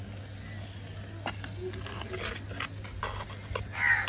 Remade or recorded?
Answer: recorded